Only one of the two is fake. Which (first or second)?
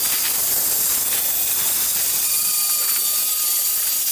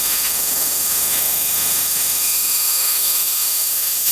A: second